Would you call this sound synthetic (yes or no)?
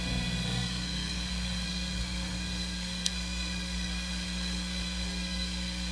yes